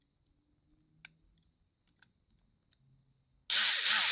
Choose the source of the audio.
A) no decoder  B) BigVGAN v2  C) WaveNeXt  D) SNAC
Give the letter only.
A